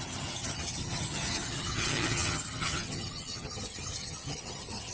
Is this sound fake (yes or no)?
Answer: yes